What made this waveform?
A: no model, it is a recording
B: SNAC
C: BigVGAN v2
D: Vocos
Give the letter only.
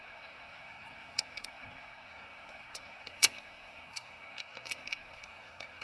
B